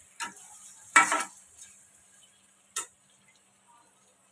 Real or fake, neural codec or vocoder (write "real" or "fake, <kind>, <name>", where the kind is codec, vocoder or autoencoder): fake, vocoder, BigVGAN v2